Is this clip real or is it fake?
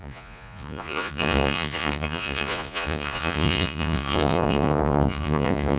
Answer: fake